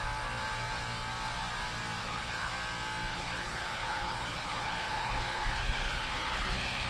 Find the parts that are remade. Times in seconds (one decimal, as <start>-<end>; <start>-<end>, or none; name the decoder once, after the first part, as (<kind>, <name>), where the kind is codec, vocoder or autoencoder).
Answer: 2.0-2.5 (codec, HILCodec); 3.1-6.9